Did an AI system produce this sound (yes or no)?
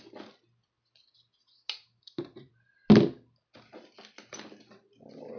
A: no